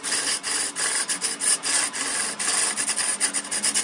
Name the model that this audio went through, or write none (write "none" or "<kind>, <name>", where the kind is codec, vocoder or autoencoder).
none